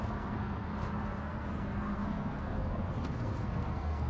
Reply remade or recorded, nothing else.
remade